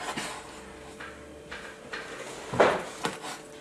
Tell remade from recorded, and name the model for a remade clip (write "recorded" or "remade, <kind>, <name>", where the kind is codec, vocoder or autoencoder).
recorded